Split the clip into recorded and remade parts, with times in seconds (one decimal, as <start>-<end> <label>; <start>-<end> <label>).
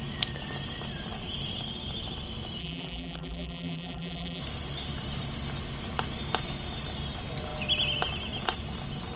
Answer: 0.0-2.6 recorded; 2.6-4.4 remade; 4.4-9.2 recorded